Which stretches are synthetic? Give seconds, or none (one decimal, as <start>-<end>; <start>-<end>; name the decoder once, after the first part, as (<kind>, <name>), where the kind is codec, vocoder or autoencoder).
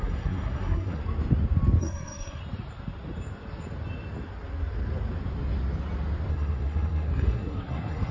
0.0-1.0 (codec, SNAC); 1.8-2.4; 6.3-8.1